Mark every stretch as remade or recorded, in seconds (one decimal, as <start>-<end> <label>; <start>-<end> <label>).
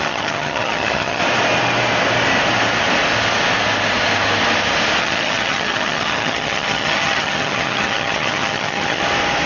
0.0-1.2 remade; 1.2-5.0 recorded; 5.0-9.0 remade; 9.0-9.5 recorded